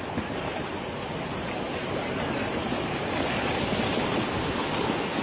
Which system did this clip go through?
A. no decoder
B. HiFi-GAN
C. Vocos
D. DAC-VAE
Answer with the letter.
A